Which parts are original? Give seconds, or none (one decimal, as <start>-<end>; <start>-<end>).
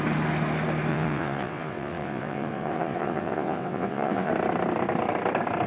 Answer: 0.0-0.9; 4.3-5.7